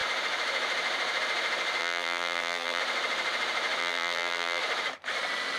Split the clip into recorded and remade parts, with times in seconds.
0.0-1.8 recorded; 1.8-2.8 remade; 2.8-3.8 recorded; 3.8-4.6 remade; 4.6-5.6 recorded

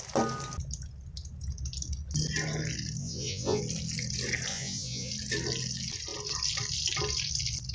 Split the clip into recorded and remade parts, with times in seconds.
0.0-3.0 recorded; 3.0-3.6 remade; 3.6-4.5 recorded; 4.5-5.1 remade; 5.1-7.7 recorded